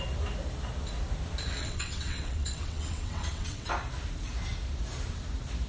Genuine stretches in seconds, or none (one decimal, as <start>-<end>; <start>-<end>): 0.0-1.6; 3.7-5.7